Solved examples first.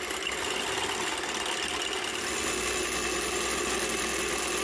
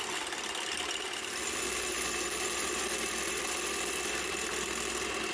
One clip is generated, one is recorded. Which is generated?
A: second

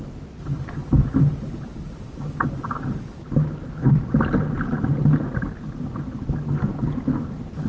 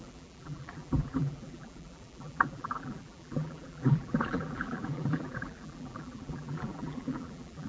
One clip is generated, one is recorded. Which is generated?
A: second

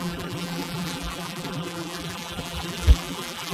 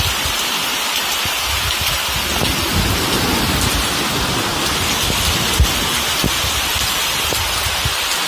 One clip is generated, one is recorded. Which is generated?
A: first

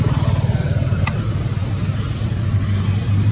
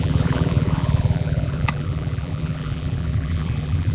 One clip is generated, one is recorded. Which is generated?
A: second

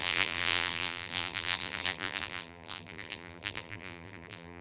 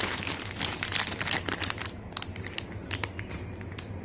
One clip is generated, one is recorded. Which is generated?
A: first